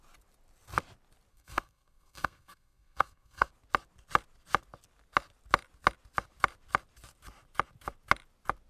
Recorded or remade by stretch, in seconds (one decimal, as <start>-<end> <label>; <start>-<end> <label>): 0.0-1.3 recorded; 1.3-3.5 remade; 3.5-8.7 recorded